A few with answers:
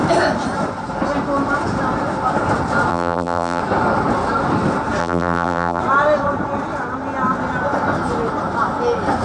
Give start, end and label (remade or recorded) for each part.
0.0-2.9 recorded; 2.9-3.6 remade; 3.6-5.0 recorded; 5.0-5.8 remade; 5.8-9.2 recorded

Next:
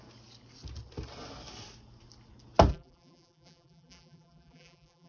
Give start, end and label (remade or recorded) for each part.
0.0-2.7 recorded; 2.7-5.1 remade

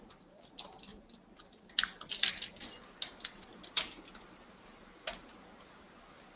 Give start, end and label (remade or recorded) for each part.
0.0-6.4 recorded

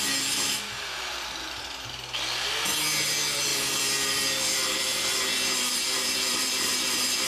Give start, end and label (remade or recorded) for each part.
0.0-3.5 recorded; 3.5-7.3 remade

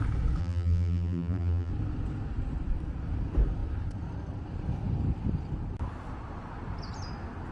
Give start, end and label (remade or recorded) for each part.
0.0-0.4 recorded; 0.4-1.7 remade; 1.7-7.5 recorded

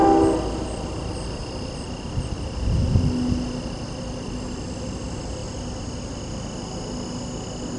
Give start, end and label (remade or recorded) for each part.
0.0-7.8 recorded

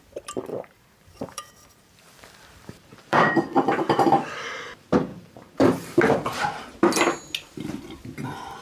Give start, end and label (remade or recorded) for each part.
0.0-0.5 recorded; 0.5-4.6 remade; 4.6-5.1 recorded; 5.1-6.6 remade; 6.6-8.6 recorded